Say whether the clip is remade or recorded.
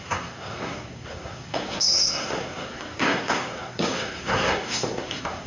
remade